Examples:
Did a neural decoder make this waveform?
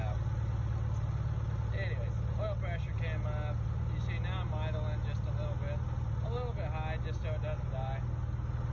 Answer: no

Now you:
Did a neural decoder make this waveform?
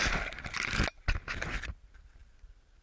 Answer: no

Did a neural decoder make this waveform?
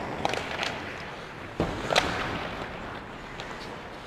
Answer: no